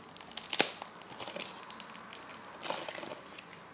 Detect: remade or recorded recorded